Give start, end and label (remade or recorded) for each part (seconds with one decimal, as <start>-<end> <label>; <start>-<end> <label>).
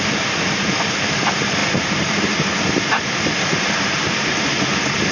0.0-5.1 remade